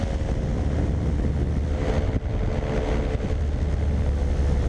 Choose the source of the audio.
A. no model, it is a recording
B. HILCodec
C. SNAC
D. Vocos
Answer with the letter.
A